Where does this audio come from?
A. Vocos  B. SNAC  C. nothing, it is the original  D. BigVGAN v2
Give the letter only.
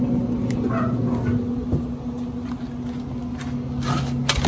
C